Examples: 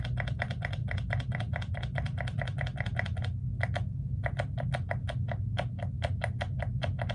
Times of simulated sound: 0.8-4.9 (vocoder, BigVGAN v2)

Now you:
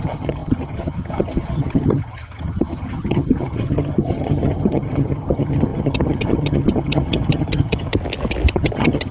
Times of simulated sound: 0.0-7.9 (vocoder, HiFi-GAN); 8.5-9.1

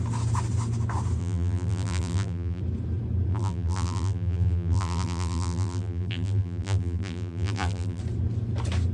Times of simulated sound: 1.2-2.6 (vocoder, BigVGAN v2); 3.3-8.0

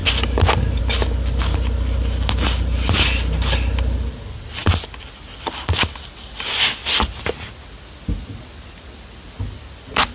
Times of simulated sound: none